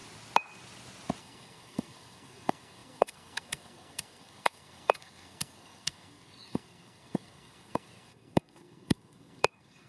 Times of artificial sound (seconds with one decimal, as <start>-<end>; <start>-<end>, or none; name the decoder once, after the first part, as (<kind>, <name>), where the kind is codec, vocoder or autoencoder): 1.2-9.9 (codec, SNAC)